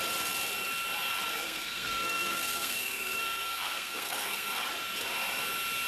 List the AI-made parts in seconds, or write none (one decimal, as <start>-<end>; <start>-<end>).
1.3-4.6